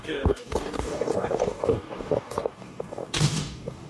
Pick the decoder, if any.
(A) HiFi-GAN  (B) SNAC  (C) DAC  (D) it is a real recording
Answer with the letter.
C